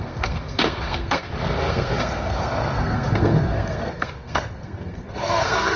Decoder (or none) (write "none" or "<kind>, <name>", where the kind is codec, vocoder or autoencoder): codec, SNAC